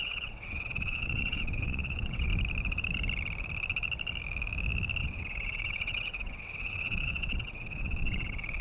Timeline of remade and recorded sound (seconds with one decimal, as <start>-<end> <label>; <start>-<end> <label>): 0.0-2.3 remade; 2.3-5.0 recorded; 5.0-8.6 remade